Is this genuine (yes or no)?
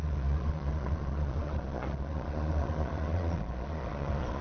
no